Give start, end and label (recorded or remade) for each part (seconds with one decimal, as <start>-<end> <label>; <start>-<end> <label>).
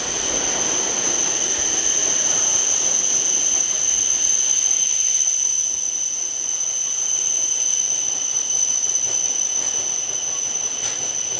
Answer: 0.0-11.4 recorded